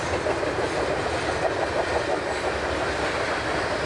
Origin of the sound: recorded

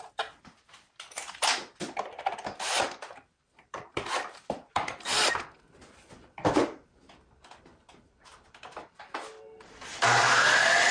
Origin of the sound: remade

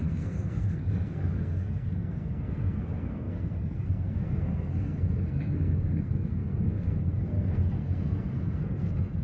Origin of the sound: remade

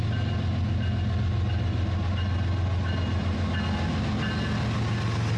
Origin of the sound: recorded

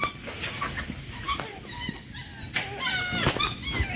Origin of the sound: recorded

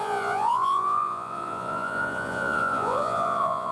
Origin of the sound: remade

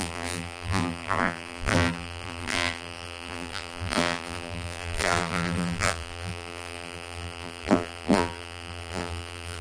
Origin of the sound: remade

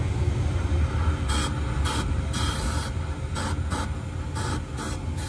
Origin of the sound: recorded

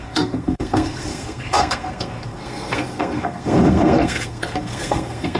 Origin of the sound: remade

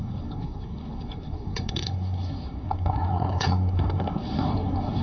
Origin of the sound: remade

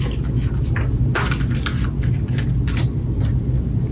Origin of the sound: recorded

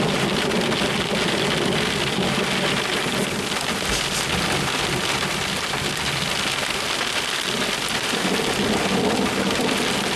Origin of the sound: recorded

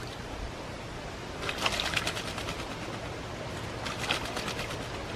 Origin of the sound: recorded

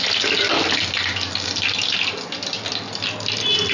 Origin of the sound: recorded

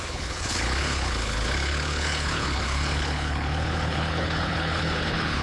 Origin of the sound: remade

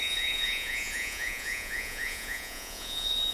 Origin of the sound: remade